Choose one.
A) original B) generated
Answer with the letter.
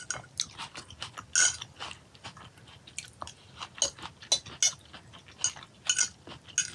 A